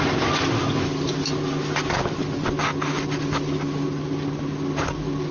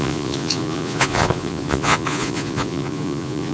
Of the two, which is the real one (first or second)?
first